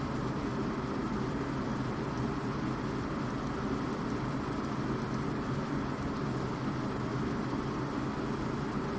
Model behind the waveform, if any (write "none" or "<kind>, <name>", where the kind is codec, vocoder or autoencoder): none